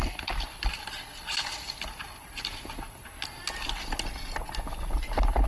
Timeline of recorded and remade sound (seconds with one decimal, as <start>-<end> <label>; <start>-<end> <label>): 0.0-5.5 recorded